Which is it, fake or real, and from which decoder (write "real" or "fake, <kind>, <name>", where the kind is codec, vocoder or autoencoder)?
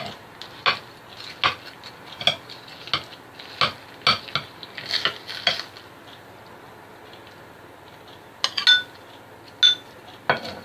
real